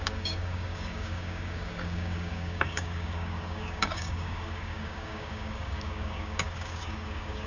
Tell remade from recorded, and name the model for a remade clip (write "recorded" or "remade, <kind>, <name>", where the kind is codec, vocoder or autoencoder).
remade, codec, DAC